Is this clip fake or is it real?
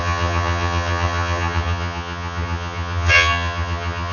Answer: fake